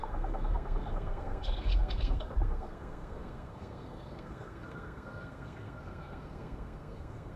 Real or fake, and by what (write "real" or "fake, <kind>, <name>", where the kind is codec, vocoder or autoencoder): fake, codec, SNAC